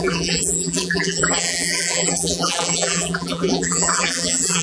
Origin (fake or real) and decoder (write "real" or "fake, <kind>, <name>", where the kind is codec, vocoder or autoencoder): fake, vocoder, BigVGAN v2